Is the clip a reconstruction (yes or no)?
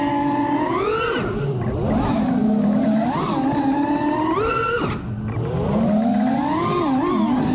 no